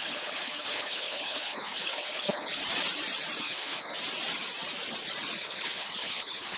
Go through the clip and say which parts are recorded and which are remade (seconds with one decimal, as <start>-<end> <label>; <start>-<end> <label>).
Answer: 0.0-2.6 remade; 2.6-3.4 recorded; 3.4-3.9 remade; 3.9-5.4 recorded; 5.4-6.6 remade